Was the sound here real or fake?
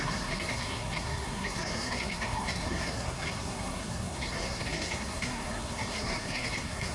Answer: fake